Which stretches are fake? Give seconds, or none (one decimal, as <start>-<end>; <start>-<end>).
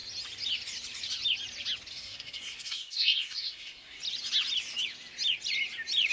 1.9-4.0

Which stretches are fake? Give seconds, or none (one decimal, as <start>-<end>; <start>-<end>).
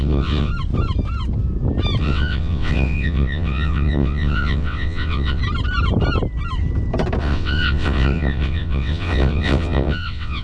0.0-0.5; 2.0-5.4; 7.2-10.4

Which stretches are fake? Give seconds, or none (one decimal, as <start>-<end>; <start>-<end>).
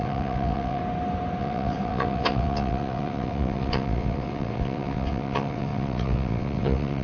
0.0-0.8; 1.4-7.0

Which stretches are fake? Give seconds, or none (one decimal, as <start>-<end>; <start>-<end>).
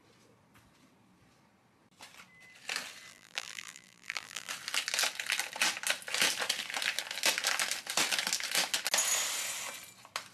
3.1-4.5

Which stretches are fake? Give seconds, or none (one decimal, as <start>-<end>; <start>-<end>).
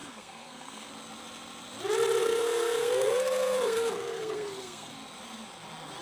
0.0-0.9; 2.2-4.9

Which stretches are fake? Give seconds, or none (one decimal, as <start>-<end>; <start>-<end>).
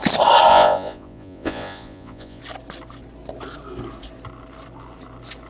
0.5-2.4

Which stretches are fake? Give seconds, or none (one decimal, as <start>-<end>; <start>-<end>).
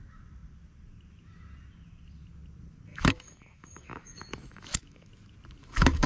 2.9-5.1; 5.6-6.1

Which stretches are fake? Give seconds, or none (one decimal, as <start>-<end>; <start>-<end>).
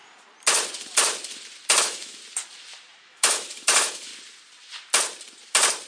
1.8-2.2; 3.0-4.1